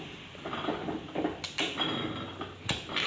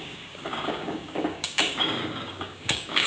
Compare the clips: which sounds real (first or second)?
first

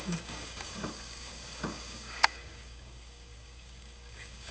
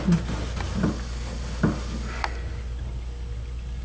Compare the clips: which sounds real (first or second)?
second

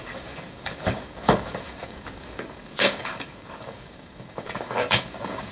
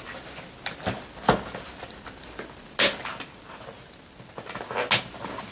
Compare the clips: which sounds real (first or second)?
second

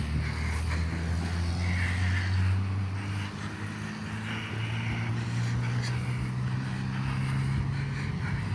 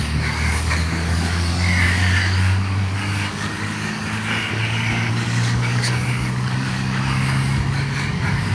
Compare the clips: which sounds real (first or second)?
first